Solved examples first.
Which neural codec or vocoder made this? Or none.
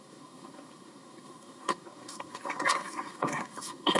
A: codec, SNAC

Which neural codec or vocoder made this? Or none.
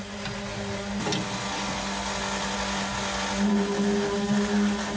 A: none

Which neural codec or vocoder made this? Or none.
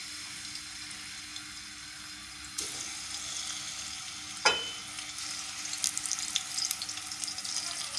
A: none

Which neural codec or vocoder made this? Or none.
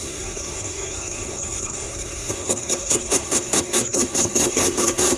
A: codec, SNAC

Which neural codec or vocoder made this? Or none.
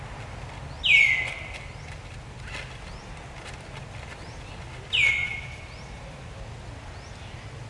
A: none